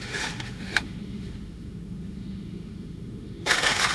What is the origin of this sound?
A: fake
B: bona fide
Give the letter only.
A